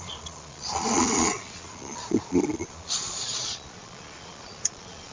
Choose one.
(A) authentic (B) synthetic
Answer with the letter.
B